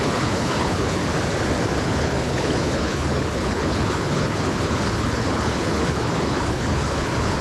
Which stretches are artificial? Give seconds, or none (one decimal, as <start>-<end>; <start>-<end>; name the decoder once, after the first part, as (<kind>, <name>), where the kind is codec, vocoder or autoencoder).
0.0-1.0 (codec, HILCodec); 1.8-7.4